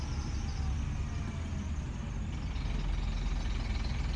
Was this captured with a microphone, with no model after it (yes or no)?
yes